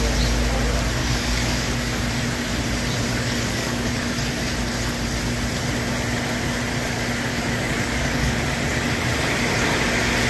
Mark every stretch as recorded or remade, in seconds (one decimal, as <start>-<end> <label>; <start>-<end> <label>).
0.0-1.0 recorded; 1.0-2.0 remade; 2.0-3.1 recorded; 3.1-4.2 remade; 4.2-7.3 recorded; 7.3-8.3 remade; 8.3-10.3 recorded

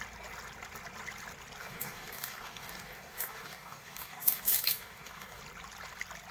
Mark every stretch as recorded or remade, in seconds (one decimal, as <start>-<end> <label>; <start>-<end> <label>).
0.0-1.6 recorded; 1.6-5.4 remade; 5.4-6.3 recorded

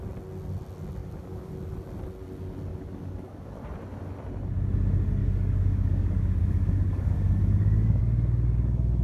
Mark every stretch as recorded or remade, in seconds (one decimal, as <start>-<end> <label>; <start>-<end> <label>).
0.0-1.0 recorded; 1.0-1.5 remade; 1.5-2.7 recorded; 2.7-3.5 remade; 3.5-5.2 recorded; 5.2-8.0 remade; 8.0-9.0 recorded

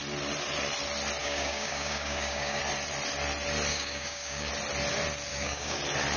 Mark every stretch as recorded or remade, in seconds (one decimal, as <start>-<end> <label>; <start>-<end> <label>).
0.0-1.2 recorded; 1.2-2.6 remade; 2.6-3.7 recorded; 3.7-4.5 remade; 4.5-5.3 recorded; 5.3-5.8 remade; 5.8-6.2 recorded

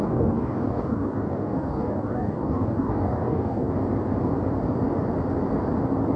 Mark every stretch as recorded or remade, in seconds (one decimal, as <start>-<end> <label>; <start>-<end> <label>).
0.0-3.7 remade; 3.7-6.2 recorded

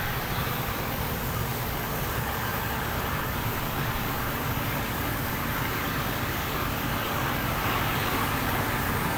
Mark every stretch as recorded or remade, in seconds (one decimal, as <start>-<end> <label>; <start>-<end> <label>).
0.0-9.2 remade

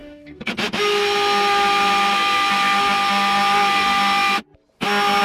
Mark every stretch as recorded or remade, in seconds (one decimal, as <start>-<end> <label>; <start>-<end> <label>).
0.0-0.5 remade; 0.5-5.2 recorded